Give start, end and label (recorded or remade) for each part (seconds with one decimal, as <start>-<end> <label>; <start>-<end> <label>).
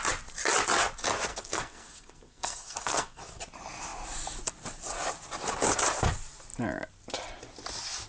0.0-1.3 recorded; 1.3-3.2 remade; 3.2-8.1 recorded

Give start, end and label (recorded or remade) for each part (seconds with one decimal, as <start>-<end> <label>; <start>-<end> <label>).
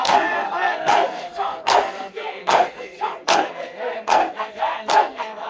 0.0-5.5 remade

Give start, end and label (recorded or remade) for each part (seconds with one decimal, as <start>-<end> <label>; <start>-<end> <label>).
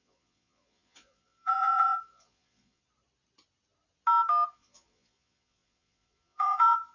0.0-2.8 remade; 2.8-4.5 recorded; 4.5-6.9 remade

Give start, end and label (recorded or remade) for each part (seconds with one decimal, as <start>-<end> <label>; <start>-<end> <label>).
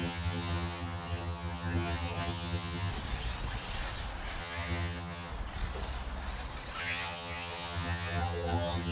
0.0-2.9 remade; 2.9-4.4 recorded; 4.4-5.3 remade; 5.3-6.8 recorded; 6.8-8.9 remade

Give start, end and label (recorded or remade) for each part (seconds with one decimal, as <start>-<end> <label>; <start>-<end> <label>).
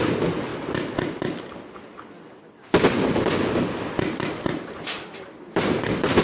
0.0-6.2 recorded